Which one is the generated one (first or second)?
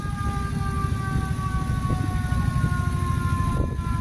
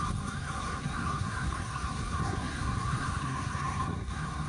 second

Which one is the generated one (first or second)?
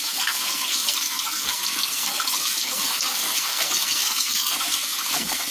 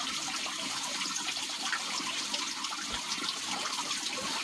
first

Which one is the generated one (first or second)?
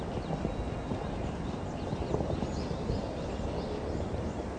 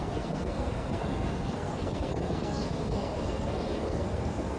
second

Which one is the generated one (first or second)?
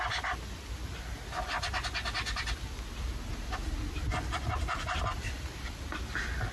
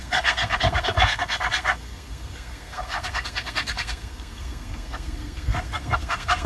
second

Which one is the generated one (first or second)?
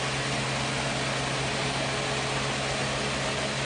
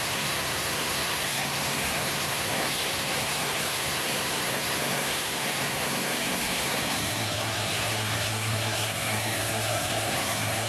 second